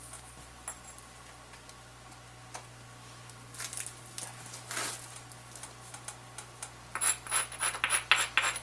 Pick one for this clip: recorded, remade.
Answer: recorded